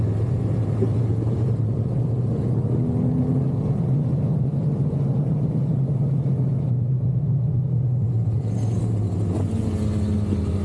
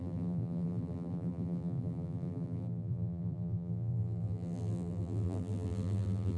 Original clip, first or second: first